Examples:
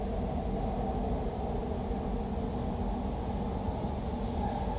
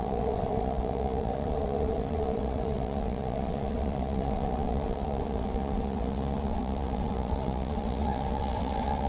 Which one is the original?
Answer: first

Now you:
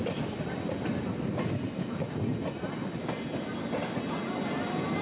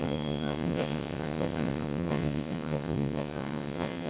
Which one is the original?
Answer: first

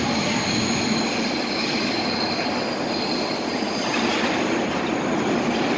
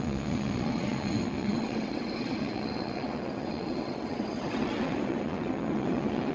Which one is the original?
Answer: first